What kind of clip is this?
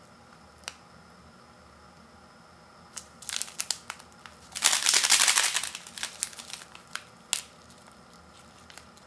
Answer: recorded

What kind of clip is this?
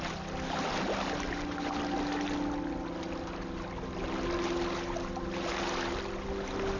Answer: recorded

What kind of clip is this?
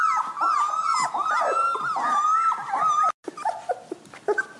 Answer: recorded